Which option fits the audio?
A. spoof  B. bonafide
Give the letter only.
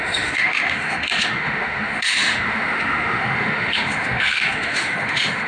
A